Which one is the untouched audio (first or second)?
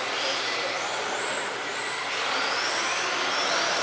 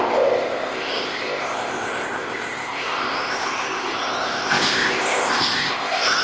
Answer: first